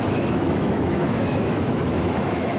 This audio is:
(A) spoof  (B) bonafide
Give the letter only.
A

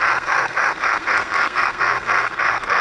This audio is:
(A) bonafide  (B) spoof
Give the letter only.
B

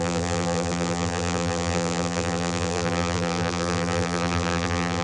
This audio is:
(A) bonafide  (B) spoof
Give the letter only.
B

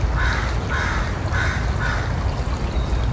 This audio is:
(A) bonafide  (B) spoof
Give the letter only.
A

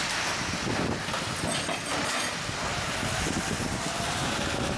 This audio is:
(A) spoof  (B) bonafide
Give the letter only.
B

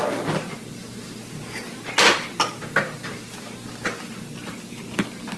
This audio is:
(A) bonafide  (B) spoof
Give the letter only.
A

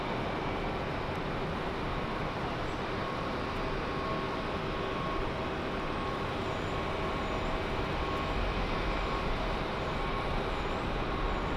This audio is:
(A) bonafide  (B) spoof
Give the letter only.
A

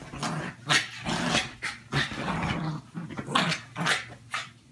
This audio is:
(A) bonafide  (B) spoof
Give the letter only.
A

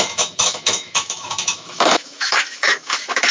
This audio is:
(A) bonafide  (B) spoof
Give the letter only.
B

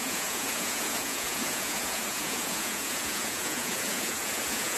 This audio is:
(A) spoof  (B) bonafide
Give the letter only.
A